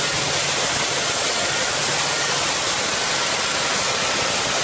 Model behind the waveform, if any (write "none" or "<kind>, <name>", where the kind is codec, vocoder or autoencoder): none